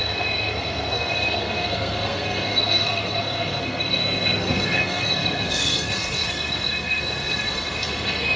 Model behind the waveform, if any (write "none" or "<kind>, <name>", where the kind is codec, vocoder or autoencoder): codec, SNAC